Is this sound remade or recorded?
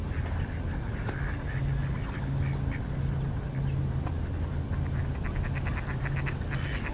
recorded